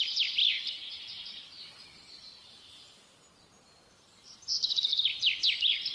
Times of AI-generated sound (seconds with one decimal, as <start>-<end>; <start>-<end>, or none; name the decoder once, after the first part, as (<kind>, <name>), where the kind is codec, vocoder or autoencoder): 0.0-0.4 (vocoder, BigVGAN v2); 3.9-4.9